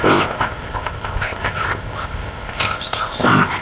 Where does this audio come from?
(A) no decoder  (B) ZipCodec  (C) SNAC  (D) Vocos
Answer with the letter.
B